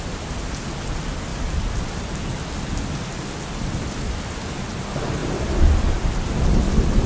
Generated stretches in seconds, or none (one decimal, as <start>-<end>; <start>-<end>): 5.2-7.1